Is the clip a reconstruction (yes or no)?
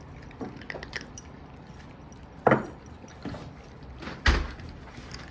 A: no